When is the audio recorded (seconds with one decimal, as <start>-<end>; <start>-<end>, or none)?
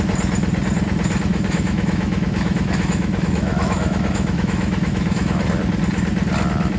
0.0-1.3; 5.4-6.8